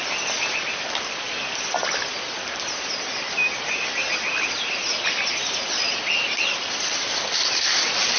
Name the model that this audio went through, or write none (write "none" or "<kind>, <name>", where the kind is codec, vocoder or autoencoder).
none